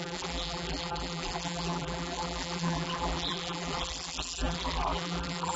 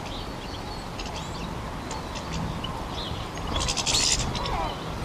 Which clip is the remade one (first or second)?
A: first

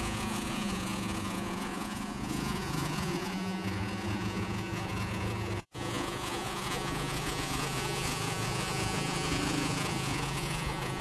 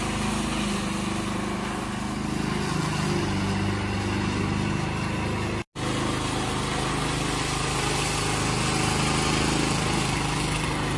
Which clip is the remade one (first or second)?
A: first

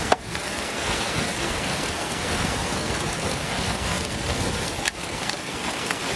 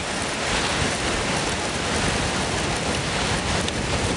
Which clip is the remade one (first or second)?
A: first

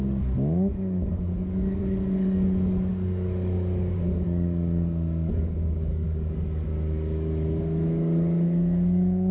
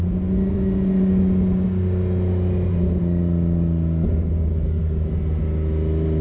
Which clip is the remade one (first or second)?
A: first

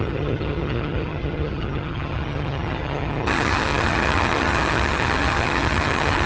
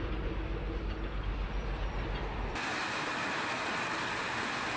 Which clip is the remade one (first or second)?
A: first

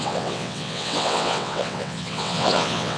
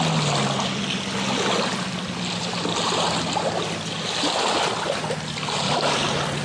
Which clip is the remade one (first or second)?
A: first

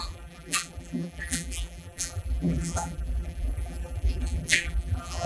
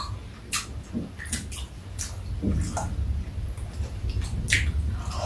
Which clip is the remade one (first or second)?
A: first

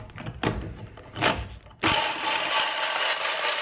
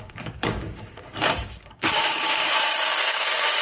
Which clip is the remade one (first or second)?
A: second